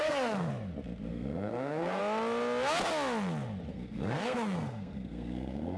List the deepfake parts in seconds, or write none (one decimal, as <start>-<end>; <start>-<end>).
0.0-0.5; 1.1-2.0; 3.7-5.8